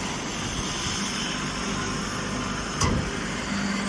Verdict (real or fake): real